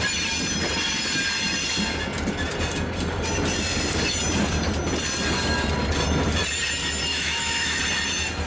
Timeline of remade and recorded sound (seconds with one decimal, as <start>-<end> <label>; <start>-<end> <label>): 0.0-7.1 recorded; 7.1-7.8 remade; 7.8-8.5 recorded